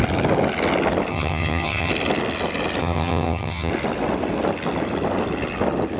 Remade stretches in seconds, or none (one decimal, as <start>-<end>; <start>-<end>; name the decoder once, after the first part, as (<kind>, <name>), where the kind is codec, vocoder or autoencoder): 1.1-1.9 (vocoder, HiFi-GAN); 2.8-3.7